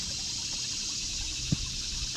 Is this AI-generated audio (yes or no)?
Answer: no